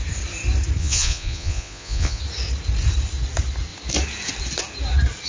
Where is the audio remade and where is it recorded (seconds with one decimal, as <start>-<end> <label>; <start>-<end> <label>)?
0.0-0.8 recorded; 0.8-2.2 remade; 2.2-5.3 recorded